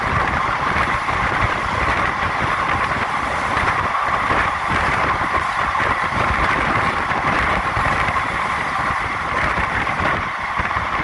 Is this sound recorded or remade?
recorded